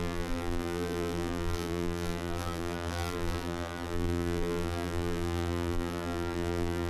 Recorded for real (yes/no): no